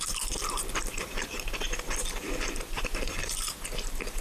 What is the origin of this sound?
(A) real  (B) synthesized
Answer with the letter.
B